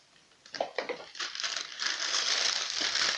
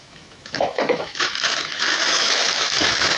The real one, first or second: first